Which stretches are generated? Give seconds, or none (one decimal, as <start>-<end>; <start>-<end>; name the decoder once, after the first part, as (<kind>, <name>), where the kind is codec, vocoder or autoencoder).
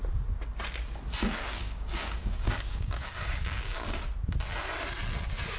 1.6-4.0 (codec, DAC)